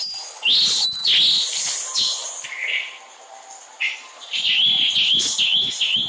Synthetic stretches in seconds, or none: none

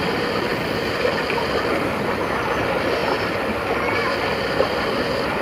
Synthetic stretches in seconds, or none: none

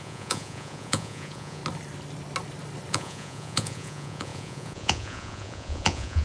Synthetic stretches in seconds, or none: 0.0-1.6 (vocoder, Vocos); 2.9-6.2

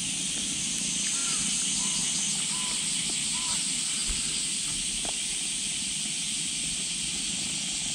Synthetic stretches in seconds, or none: none

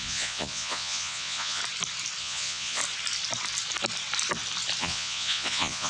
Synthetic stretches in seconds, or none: 0.0-1.6 (vocoder, Vocos); 2.2-2.8; 4.8-5.9

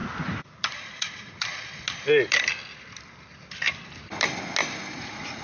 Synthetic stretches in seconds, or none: 0.0-1.5 (vocoder, Vocos); 4.7-5.4

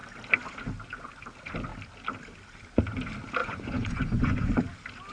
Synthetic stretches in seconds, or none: 3.4-4.6 (vocoder, Vocos)